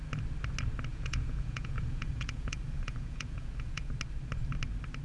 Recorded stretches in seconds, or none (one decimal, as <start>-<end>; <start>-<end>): 0.0-0.9; 3.9-5.0